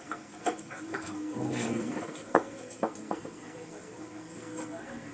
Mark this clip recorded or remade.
remade